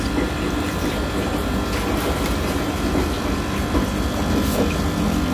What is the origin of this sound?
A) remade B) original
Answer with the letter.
B